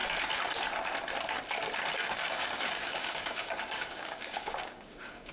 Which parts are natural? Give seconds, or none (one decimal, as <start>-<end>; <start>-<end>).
0.0-2.0